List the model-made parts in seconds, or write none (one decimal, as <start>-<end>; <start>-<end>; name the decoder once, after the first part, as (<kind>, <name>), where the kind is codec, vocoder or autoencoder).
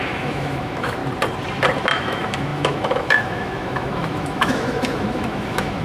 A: 0.0-1.0 (autoencoder, DAC-VAE); 1.9-5.8